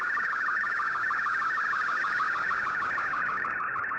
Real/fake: fake